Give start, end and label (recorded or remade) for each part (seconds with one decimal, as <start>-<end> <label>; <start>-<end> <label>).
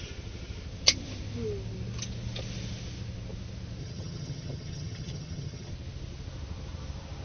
0.0-3.8 recorded; 3.8-5.7 remade; 5.7-7.2 recorded